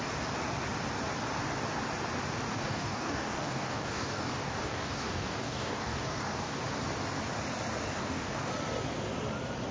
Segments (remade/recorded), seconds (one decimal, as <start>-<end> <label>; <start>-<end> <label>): 0.0-2.5 recorded; 2.5-6.6 remade; 6.6-8.0 recorded; 8.0-8.5 remade; 8.5-9.7 recorded